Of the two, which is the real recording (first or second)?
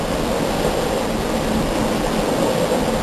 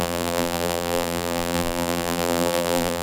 first